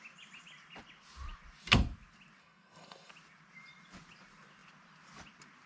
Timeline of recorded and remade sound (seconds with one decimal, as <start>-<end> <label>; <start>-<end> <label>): 0.0-2.4 recorded; 2.4-3.1 remade; 3.1-5.7 recorded